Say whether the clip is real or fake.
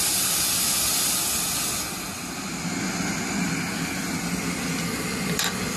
real